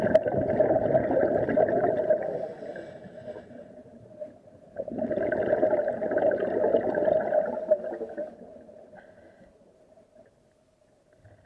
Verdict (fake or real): real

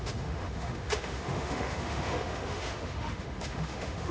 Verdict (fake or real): fake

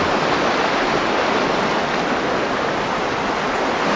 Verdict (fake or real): real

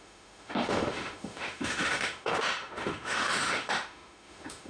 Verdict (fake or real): fake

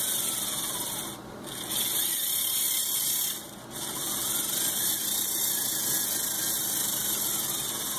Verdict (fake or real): real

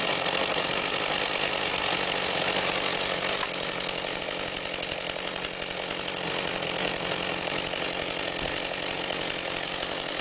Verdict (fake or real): real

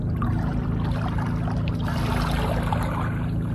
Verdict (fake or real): real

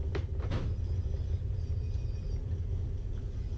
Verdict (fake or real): real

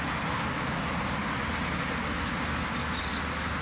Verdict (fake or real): real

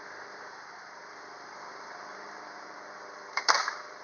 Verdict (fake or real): fake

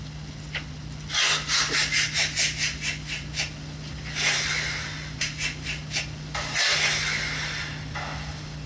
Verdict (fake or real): real